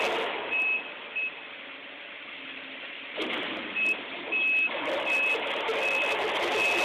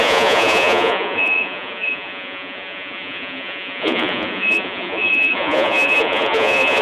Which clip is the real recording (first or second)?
first